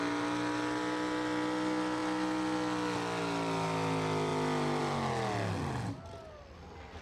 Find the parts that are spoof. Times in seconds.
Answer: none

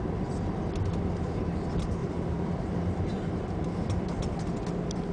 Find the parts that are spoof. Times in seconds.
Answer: 0.9-1.4 (vocoder, BigVGAN v2); 2.0-4.4

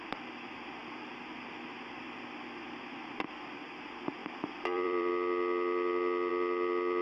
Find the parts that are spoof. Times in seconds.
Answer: 4.2-5.1 (vocoder, BigVGAN v2)

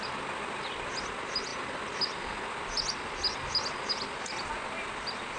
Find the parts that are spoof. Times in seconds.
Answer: none

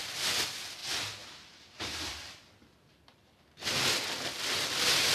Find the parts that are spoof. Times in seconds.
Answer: none

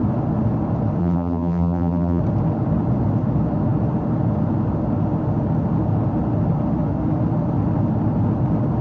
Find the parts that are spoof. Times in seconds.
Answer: 1.0-2.2 (vocoder, BigVGAN v2)

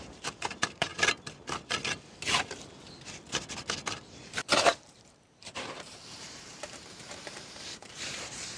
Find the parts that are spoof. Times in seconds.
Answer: 0.0-0.9 (vocoder, BigVGAN v2); 4.2-8.6